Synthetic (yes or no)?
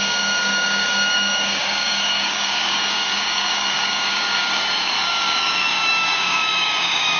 yes